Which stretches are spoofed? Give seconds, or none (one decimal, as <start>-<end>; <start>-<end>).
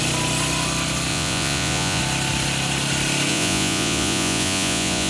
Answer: 1.1-2.0; 3.3-5.1